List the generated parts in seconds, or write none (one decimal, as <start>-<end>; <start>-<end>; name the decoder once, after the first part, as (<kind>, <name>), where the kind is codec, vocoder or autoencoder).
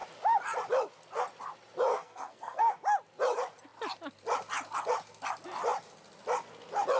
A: 1.9-2.8 (codec, SNAC)